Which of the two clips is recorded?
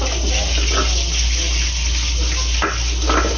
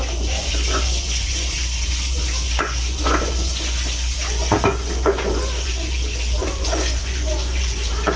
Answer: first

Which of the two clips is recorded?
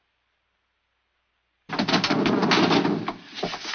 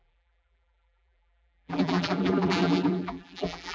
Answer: first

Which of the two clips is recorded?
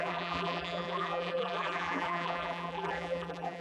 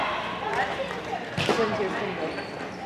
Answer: second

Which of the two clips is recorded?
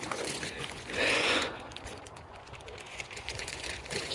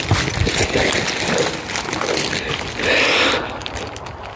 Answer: second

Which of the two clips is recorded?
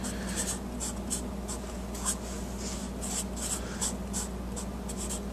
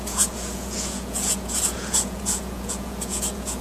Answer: first